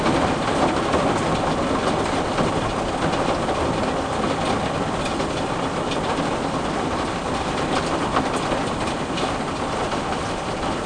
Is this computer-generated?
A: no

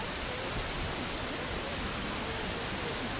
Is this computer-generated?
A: no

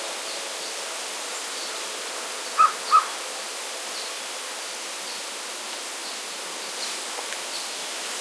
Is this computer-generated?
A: no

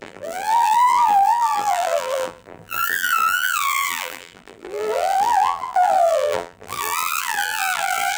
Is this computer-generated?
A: yes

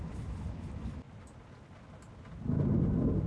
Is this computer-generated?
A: no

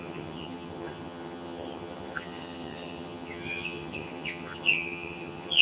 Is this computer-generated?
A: yes